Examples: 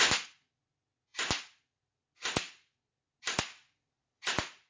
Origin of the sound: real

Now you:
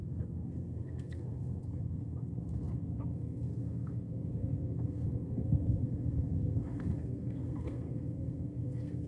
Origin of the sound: fake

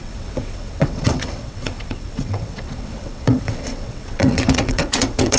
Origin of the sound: fake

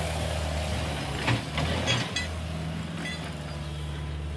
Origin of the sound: real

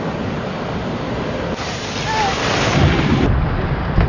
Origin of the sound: real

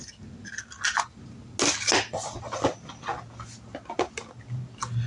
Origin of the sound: real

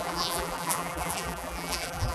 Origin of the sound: fake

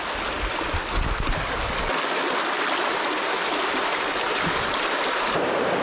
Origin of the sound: real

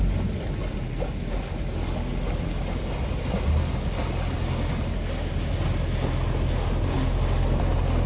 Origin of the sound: real